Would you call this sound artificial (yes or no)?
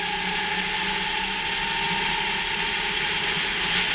no